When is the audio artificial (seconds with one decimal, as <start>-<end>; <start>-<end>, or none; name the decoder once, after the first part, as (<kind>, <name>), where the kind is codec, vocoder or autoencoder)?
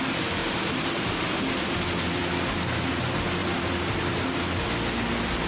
0.4-1.0 (vocoder, BigVGAN v2); 3.4-4.1